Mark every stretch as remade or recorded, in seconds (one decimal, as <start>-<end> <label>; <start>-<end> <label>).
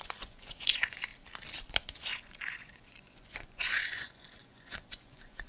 0.0-1.1 remade; 1.1-2.0 recorded; 2.0-5.5 remade